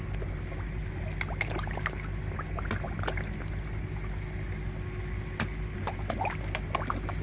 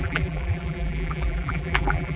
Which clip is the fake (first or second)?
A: second